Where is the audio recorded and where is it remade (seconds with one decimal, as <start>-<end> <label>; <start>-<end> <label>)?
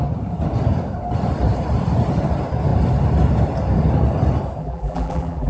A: 0.0-4.6 recorded; 4.6-5.5 remade